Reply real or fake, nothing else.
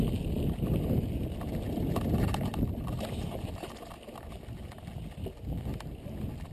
real